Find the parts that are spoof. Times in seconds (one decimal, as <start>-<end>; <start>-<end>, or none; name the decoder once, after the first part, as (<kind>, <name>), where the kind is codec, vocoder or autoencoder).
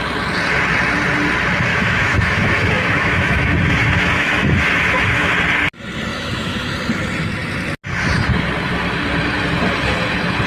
1.7-5.3 (autoencoder, DAC-VAE); 6.1-6.7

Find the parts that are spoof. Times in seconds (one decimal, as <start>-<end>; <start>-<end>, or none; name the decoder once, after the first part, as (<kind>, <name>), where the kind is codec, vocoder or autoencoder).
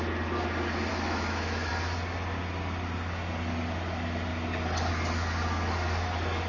0.9-1.7 (autoencoder, DAC-VAE)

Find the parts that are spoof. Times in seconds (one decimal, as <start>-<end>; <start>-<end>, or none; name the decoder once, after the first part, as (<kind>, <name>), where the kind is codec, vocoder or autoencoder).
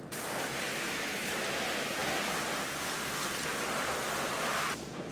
0.7-1.3 (autoencoder, DAC-VAE)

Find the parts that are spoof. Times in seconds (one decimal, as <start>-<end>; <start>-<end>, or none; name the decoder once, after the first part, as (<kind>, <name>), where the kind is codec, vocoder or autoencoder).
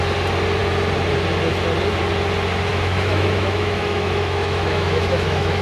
2.7-5.6 (autoencoder, DAC-VAE)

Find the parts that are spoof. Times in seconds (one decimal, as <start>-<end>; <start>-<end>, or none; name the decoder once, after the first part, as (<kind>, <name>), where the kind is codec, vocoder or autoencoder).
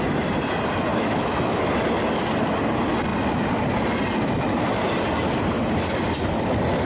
0.9-1.7 (autoencoder, DAC-VAE)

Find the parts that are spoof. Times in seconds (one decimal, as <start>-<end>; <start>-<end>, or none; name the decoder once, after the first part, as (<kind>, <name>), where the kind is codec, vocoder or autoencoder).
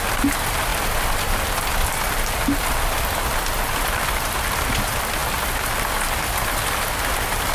none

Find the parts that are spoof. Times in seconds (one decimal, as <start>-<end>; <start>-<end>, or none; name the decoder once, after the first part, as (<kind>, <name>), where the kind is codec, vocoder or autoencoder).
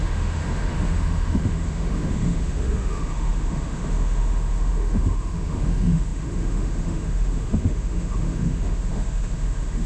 0.0-9.9 (autoencoder, DAC-VAE)